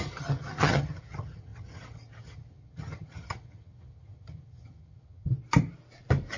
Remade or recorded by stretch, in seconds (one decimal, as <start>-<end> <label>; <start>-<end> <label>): 0.0-5.3 remade; 5.3-6.4 recorded